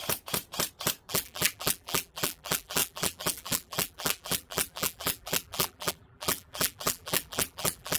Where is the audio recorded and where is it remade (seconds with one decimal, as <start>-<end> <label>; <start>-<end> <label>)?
0.0-1.1 recorded; 1.1-8.0 remade